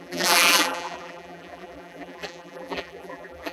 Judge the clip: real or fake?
fake